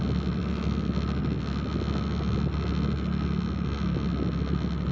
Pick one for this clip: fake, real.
real